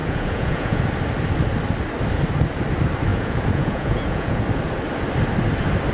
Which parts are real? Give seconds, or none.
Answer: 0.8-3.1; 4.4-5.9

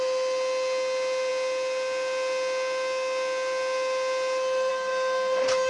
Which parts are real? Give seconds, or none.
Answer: 0.0-5.7

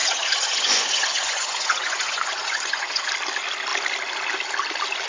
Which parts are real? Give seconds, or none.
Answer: 3.1-5.1

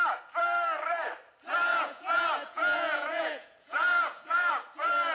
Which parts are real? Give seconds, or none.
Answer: 0.0-1.7; 4.5-5.1